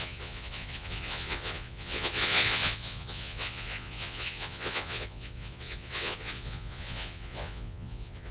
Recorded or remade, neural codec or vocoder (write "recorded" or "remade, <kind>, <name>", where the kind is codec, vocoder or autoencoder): remade, vocoder, Vocos